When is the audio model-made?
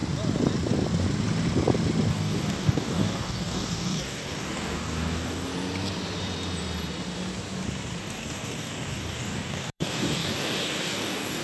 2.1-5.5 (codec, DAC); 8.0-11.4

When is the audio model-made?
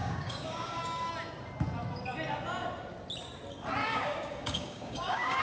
0.0-1.1 (codec, DAC); 3.8-5.4